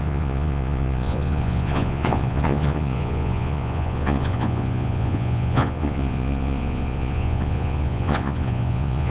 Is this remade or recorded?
remade